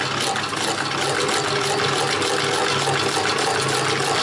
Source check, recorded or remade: recorded